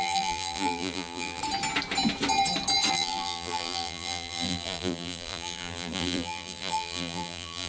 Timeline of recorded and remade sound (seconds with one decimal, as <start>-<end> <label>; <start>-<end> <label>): 0.0-1.4 remade; 1.4-2.9 recorded; 2.9-7.7 remade